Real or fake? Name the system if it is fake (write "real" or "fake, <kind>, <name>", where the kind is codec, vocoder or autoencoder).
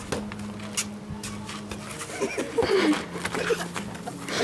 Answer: real